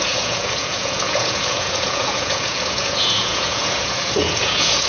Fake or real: fake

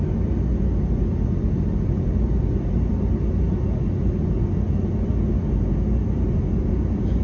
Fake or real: real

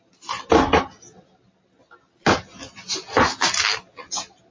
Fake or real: real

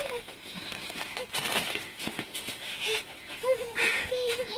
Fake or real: fake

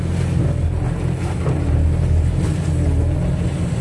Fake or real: real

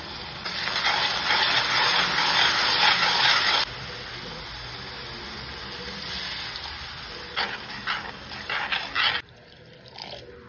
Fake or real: real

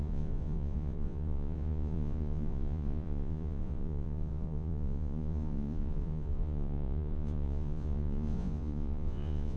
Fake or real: fake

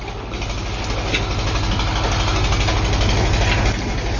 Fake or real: real